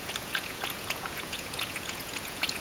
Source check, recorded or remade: remade